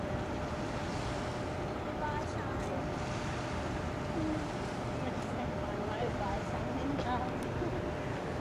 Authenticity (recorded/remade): remade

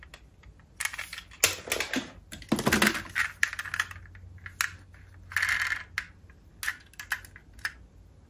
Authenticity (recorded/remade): recorded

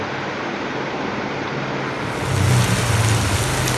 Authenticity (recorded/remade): recorded